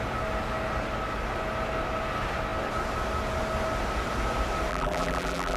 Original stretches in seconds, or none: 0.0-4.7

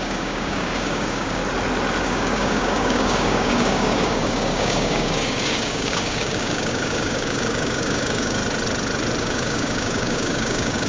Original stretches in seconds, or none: 1.4-2.0; 8.4-9.2